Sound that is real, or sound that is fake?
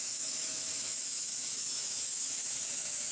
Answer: fake